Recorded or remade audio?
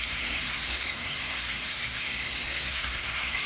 remade